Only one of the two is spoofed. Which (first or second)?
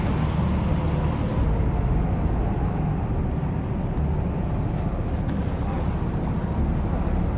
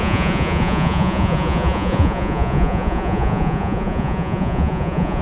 second